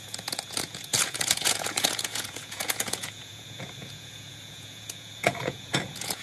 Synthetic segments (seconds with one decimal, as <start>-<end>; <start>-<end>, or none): 0.0-6.2